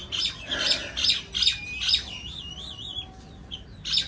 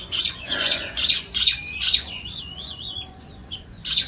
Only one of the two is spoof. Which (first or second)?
second